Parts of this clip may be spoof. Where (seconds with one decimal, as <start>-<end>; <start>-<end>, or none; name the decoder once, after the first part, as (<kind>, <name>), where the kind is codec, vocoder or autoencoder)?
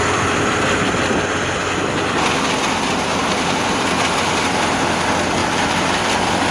3.1-4.6 (vocoder, BigVGAN v2); 5.4-6.0